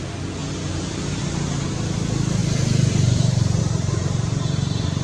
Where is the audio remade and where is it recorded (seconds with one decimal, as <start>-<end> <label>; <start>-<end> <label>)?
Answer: 0.0-2.4 recorded; 2.4-3.6 remade; 3.6-5.0 recorded